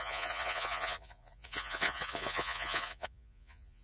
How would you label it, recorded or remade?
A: remade